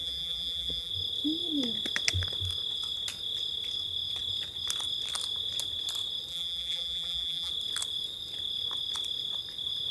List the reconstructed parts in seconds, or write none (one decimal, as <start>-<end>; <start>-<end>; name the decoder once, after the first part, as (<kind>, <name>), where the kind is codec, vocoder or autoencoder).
0.0-0.9 (vocoder, BigVGAN v2); 6.3-7.5